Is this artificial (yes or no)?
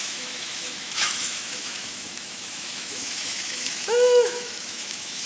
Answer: yes